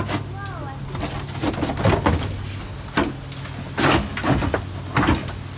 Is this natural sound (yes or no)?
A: yes